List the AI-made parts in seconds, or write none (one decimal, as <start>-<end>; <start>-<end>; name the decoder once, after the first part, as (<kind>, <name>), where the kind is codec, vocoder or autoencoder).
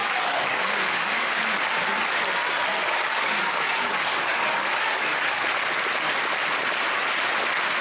0.0-1.3 (codec, DAC); 2.8-5.4